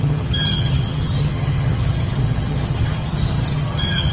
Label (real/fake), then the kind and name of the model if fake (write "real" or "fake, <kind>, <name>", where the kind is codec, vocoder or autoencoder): fake, vocoder, HiFi-GAN